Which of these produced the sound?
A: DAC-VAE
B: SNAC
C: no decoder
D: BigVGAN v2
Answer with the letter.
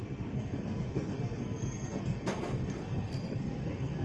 B